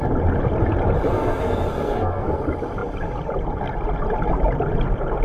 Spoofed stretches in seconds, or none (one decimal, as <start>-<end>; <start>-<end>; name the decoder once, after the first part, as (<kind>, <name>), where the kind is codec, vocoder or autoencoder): 1.1-2.4 (codec, SNAC)